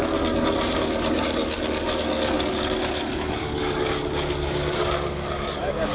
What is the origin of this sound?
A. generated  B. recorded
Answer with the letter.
A